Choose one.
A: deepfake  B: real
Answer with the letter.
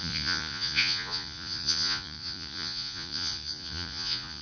A